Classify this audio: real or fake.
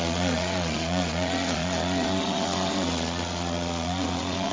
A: fake